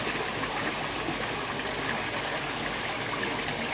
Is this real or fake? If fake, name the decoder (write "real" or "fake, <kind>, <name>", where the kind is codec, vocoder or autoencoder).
real